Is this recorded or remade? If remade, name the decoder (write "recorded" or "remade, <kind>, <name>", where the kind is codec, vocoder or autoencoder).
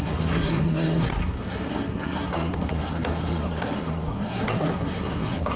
remade, codec, SNAC